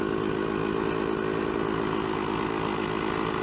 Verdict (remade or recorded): recorded